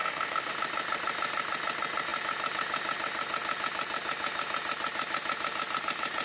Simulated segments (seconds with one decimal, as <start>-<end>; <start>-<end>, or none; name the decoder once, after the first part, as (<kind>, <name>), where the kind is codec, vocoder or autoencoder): 0.0-0.5 (autoencoder, DAC-VAE)